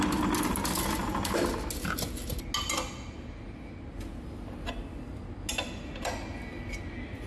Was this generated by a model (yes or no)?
no